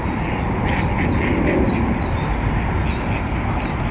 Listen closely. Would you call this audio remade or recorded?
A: recorded